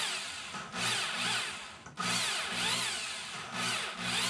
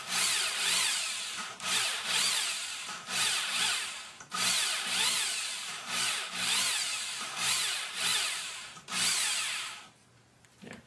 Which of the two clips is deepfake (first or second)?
second